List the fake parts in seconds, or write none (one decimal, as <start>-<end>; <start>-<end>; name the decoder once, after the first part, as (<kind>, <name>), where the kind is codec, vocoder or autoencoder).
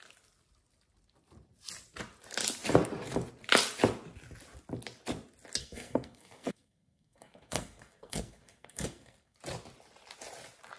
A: 5.6-9.4 (codec, SNAC)